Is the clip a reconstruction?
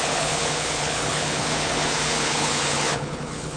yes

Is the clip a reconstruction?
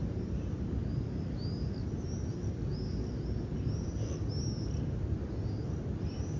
no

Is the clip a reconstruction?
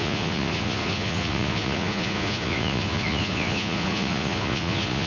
yes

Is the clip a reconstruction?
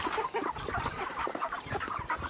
no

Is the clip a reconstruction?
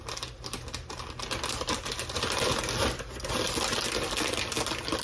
no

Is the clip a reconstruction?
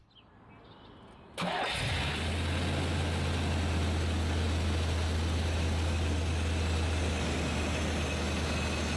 no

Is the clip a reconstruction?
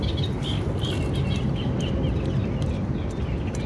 no